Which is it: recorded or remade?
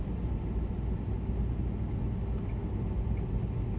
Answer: recorded